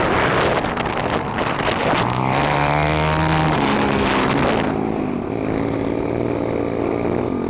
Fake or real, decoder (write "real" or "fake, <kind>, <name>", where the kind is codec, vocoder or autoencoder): real